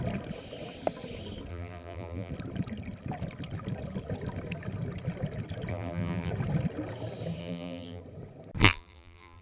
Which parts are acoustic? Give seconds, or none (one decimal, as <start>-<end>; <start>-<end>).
0.0-1.5; 2.3-5.7; 6.3-7.4; 8.0-8.6